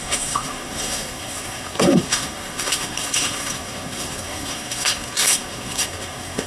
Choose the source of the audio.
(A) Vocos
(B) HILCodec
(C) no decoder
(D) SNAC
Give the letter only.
D